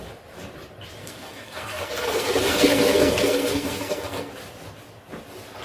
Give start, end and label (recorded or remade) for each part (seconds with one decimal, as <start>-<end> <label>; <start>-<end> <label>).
0.0-1.0 recorded; 1.0-4.3 remade; 4.3-5.6 recorded